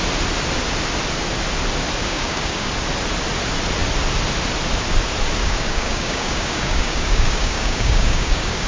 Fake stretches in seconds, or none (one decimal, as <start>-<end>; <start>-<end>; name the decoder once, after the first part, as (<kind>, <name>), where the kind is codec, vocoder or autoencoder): 2.0-2.7 (codec, DAC); 5.4-8.7